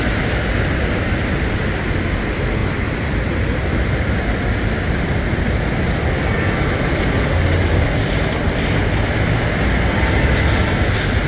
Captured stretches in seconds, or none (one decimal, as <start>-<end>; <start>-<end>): 0.0-11.3